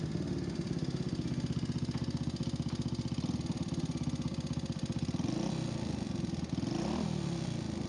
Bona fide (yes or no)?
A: yes